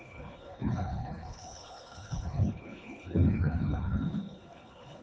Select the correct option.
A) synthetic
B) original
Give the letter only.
A